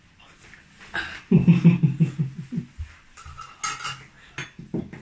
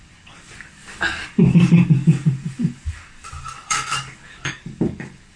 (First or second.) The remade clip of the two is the second